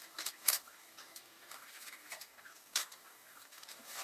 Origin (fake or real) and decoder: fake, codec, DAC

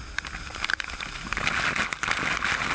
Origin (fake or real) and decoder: real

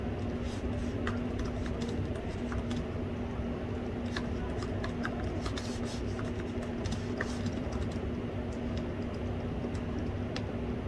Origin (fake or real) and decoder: real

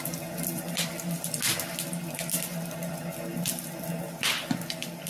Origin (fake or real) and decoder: real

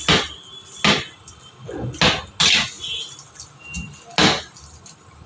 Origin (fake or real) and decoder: real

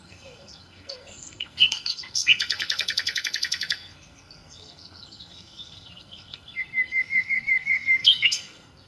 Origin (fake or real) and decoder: fake, codec, SNAC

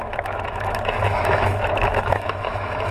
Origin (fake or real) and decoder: fake, autoencoder, DAC-VAE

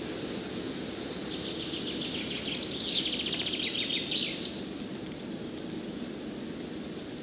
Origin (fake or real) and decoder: real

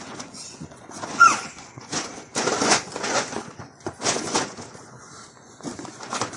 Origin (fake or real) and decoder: fake, vocoder, Vocos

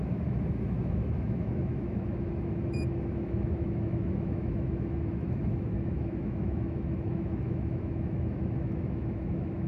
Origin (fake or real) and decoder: fake, autoencoder, DAC-VAE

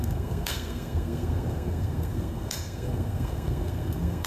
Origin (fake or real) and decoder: fake, codec, SNAC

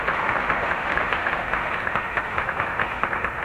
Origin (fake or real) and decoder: fake, autoencoder, DAC-VAE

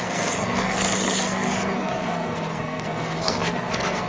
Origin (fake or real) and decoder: fake, codec, SNAC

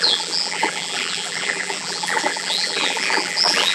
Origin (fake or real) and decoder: fake, vocoder, BigVGAN v2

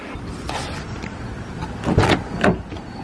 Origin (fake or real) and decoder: real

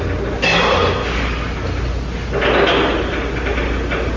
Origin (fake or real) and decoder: real